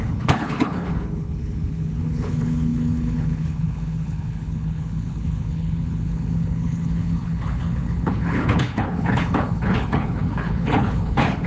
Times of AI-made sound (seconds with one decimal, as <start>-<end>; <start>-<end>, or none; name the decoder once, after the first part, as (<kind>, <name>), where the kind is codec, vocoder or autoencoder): 0.0-11.5 (codec, HILCodec)